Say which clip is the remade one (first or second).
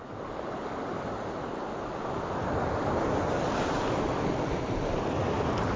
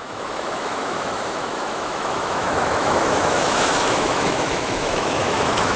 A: second